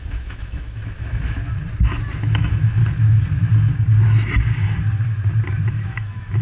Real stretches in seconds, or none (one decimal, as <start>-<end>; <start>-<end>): 1.4-2.2; 2.8-5.7